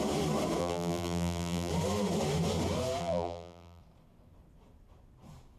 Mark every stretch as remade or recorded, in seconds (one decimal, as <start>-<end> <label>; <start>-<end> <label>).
0.0-0.6 recorded; 0.6-1.7 remade; 1.7-3.0 recorded; 3.0-3.8 remade; 3.8-5.6 recorded

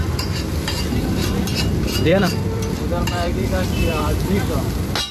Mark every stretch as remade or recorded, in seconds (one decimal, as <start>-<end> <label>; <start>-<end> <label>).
0.0-4.0 remade; 4.0-5.1 recorded

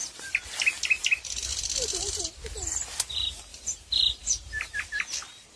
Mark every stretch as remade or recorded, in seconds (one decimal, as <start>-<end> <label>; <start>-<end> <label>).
0.0-1.5 recorded; 1.5-2.2 remade; 2.2-3.5 recorded; 3.5-4.8 remade; 4.8-5.6 recorded